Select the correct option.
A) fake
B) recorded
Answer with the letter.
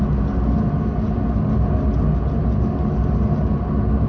B